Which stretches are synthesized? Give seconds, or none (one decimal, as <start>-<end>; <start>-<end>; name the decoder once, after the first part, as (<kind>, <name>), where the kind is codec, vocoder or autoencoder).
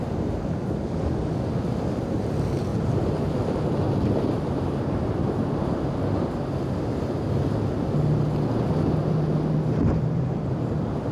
2.7-3.3 (vocoder, BigVGAN v2)